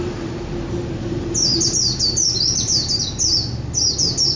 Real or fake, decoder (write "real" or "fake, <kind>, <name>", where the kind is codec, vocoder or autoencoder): real